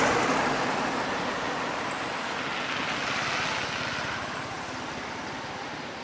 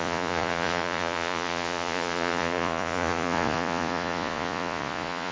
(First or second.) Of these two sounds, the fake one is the second